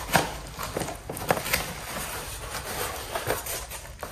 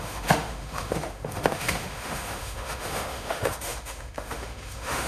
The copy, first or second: second